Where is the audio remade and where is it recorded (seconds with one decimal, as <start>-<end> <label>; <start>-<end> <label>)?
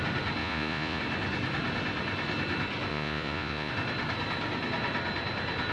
0.0-0.4 recorded; 0.4-1.0 remade; 1.0-2.9 recorded; 2.9-3.7 remade; 3.7-5.7 recorded